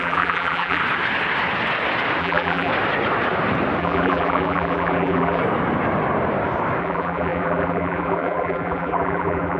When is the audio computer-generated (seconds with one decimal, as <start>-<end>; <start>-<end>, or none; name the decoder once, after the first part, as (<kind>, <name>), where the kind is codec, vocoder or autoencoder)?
0.0-0.8 (vocoder, BigVGAN v2); 2.2-2.7; 3.8-5.4; 6.8-9.6